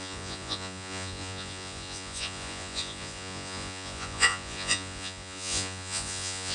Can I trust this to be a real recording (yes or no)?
no